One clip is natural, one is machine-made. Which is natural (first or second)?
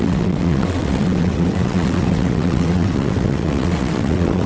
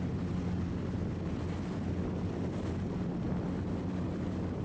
second